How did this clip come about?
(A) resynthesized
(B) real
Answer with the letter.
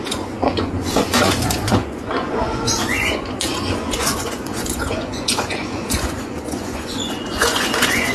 A